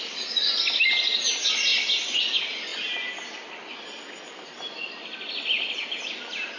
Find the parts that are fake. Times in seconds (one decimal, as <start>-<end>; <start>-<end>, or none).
none